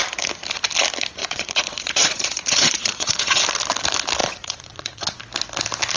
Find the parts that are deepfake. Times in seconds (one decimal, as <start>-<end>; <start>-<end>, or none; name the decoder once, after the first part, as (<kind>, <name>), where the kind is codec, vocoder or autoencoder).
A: 1.2-3.4 (vocoder, Vocos); 4.2-5.2